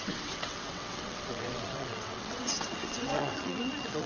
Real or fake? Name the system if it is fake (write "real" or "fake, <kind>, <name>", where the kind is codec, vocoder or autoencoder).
fake, vocoder, WaveNeXt